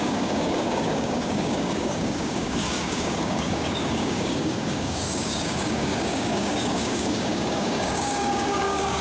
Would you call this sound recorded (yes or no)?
no